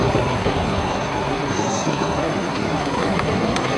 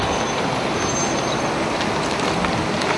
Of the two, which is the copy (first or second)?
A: first